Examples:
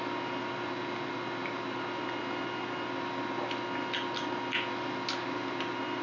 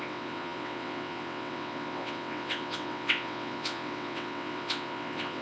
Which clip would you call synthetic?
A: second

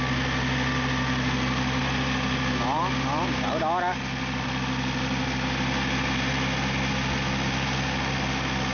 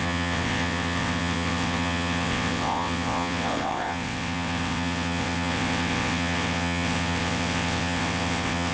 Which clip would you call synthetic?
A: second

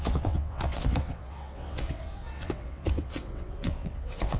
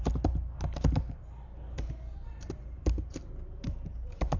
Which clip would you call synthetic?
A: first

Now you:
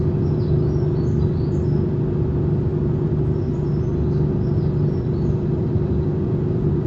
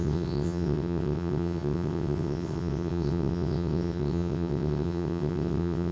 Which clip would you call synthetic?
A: second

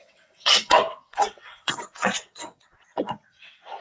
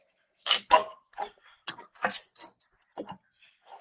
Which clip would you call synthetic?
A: first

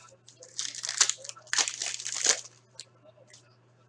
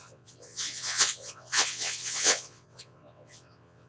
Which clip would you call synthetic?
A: second